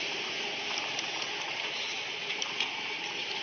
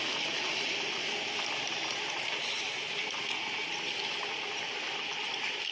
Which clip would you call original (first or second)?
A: second